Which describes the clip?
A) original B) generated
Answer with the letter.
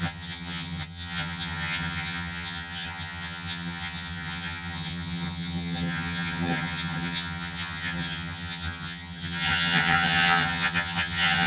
B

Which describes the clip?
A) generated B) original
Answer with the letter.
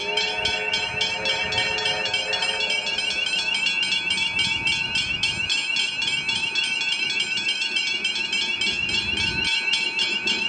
B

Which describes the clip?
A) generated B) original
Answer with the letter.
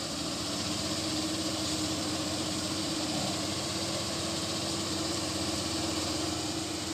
A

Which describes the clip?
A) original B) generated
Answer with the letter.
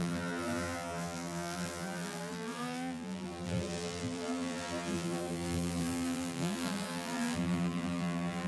B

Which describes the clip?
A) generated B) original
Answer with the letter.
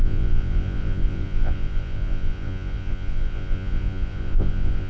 A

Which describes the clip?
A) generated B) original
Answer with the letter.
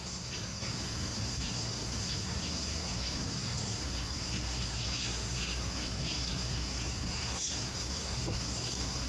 A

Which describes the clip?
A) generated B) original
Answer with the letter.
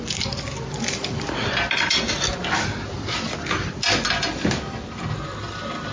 B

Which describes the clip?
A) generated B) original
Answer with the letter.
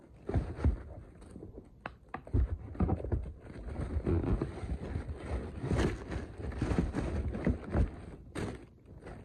B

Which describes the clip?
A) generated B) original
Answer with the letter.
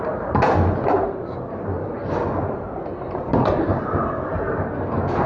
B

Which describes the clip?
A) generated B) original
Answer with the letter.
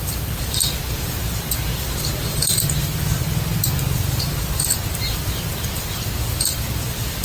A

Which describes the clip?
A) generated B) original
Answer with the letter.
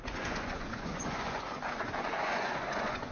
A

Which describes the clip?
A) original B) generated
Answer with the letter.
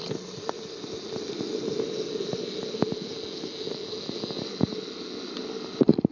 A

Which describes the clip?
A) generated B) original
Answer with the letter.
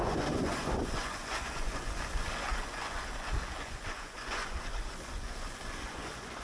A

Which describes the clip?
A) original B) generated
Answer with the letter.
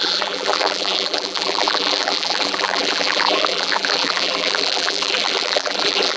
B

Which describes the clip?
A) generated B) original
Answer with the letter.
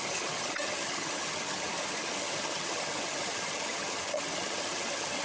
A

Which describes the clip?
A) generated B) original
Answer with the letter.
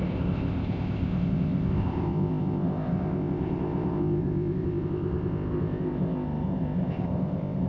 A